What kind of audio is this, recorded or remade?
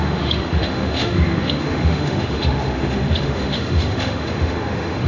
remade